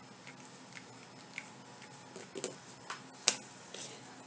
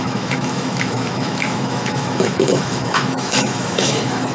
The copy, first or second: second